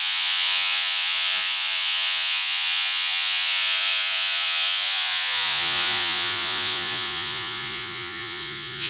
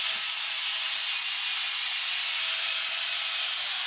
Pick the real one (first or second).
second